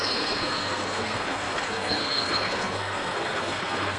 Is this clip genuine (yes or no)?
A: no